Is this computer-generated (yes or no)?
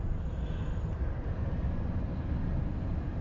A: no